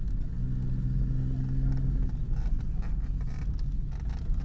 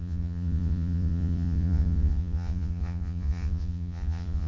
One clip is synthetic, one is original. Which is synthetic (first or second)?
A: second